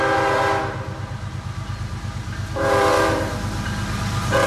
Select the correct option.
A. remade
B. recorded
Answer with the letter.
B